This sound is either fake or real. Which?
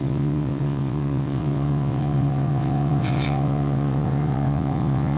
fake